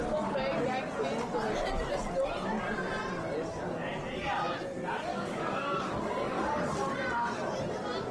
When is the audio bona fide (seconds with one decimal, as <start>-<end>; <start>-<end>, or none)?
0.0-5.1; 6.5-8.1